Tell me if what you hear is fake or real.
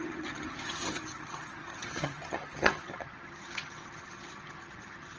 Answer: fake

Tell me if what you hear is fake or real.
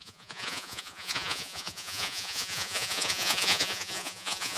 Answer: fake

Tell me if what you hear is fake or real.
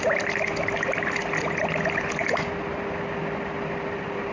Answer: real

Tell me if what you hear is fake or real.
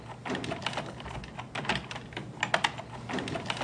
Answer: real